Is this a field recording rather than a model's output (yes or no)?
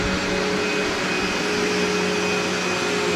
yes